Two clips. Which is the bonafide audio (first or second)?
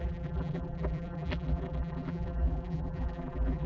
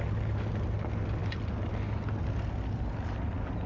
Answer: second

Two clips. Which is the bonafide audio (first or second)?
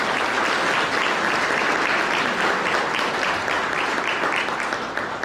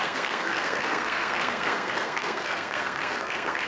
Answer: first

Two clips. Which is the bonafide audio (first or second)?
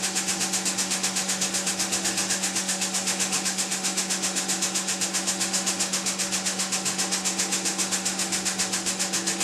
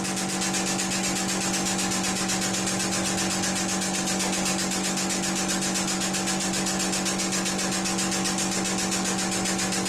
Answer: second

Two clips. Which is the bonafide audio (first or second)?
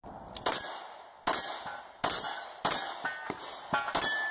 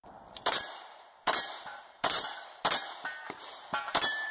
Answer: first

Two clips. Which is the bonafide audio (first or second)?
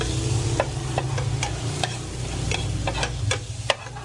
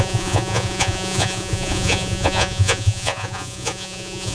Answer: first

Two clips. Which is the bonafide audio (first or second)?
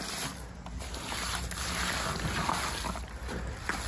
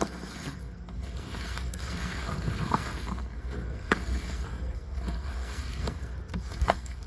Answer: first